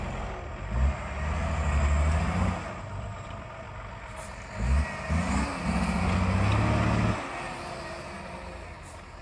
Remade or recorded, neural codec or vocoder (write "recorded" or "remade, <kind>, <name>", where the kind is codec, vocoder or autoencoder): recorded